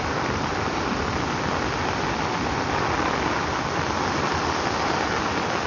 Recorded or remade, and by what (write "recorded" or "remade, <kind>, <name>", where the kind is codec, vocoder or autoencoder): recorded